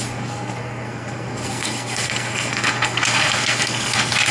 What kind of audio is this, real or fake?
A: fake